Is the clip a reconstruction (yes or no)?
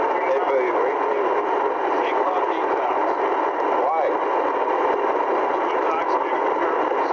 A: no